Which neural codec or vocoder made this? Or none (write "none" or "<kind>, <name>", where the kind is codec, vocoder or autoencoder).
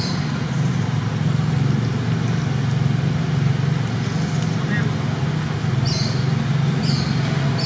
none